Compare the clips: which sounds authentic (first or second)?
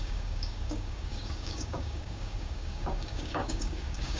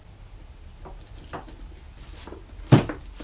second